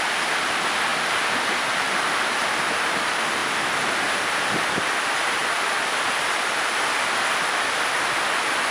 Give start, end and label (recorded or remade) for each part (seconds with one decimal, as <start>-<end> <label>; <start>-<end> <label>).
0.0-8.7 recorded